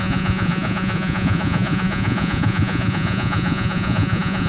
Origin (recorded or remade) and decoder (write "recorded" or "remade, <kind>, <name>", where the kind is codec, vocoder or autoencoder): remade, vocoder, Vocos